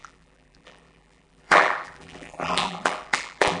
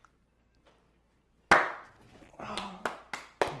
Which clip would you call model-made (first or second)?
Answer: first